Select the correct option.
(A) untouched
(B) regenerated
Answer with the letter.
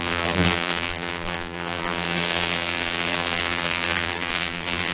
B